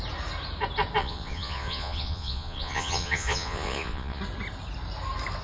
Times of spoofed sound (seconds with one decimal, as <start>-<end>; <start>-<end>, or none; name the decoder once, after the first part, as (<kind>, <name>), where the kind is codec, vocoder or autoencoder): 1.0-4.2 (vocoder, Vocos)